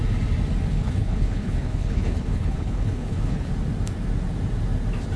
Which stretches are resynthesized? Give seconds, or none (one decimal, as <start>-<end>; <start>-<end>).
0.7-3.5